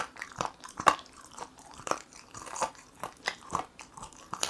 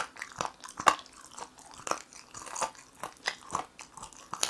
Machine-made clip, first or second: first